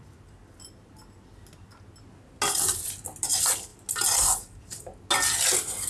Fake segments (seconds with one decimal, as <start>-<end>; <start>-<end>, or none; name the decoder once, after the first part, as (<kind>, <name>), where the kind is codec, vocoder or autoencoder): none